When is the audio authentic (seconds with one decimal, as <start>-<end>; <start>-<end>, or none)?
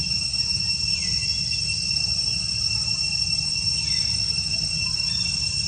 0.8-5.7